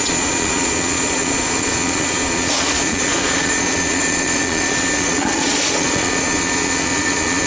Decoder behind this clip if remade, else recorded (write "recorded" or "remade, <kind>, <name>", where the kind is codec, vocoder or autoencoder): remade, vocoder, Vocos